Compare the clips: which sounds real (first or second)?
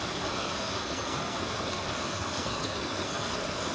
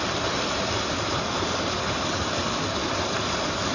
second